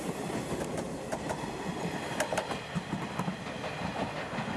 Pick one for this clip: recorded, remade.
recorded